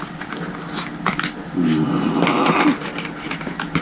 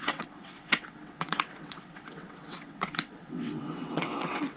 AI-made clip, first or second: second